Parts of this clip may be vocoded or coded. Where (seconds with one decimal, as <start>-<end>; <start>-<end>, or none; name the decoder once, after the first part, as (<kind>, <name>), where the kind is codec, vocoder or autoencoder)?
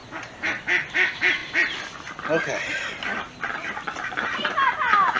1.4-4.5 (vocoder, BigVGAN v2)